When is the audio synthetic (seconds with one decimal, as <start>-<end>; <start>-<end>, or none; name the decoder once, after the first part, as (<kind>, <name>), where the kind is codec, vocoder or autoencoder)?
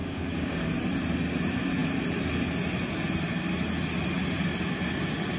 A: 0.0-0.7 (codec, DAC)